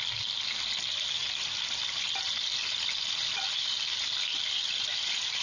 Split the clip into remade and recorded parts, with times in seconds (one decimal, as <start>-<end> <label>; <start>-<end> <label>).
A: 0.0-5.4 recorded